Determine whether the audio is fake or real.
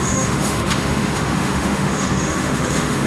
fake